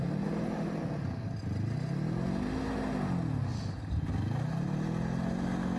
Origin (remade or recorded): recorded